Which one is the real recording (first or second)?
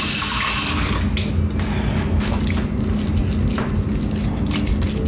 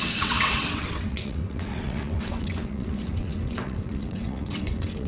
first